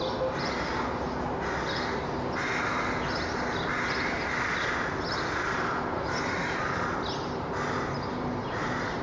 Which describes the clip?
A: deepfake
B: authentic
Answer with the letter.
B